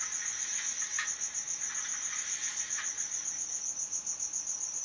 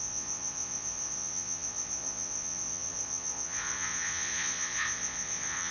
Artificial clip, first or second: second